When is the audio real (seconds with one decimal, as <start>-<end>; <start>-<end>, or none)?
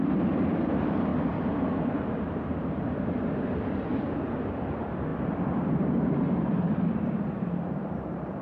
1.1-2.0